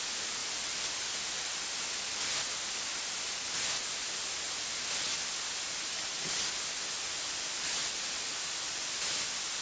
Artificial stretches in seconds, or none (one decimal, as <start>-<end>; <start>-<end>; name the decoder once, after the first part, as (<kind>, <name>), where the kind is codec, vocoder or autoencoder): 0.4-2.8 (vocoder, BigVGAN v2)